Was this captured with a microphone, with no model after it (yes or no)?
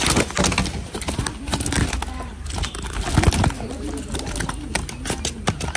yes